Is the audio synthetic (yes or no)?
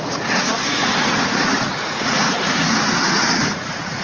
yes